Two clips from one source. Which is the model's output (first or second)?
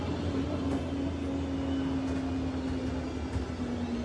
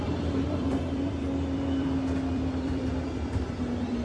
second